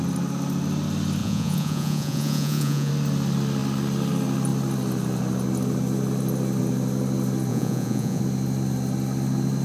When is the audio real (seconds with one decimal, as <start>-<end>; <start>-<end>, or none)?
0.0-1.2; 2.9-7.5; 8.2-9.6